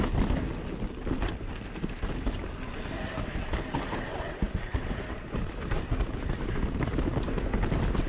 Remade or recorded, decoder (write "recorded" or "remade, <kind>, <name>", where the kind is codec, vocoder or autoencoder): recorded